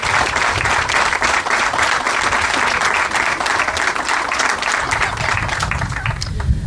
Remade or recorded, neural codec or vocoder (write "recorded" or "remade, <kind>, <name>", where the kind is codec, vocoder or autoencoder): remade, vocoder, BigVGAN v2